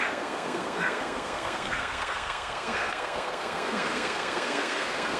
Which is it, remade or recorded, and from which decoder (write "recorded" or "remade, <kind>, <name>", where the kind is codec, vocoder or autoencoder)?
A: remade, codec, SNAC